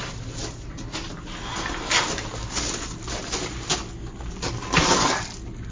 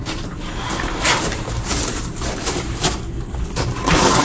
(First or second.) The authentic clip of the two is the first